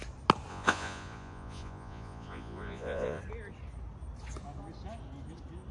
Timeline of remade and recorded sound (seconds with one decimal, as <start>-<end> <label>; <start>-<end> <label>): 0.0-0.5 recorded; 0.5-3.2 remade; 3.2-5.7 recorded